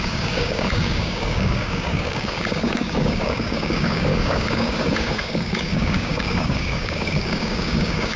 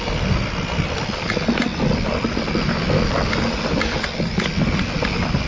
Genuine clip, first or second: second